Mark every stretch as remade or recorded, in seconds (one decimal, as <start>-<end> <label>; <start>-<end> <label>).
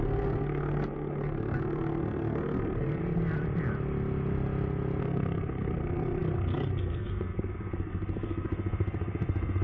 0.0-3.0 remade; 3.0-5.0 recorded; 5.0-9.6 remade